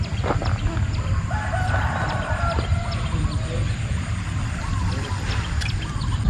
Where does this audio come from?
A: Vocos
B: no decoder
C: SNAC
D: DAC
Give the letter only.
B